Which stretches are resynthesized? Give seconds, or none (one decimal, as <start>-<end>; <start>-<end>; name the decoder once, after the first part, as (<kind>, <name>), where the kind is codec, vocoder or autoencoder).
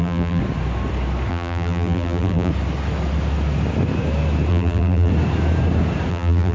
0.0-0.4 (vocoder, BigVGAN v2); 1.3-2.5; 4.5-5.1; 6.1-6.5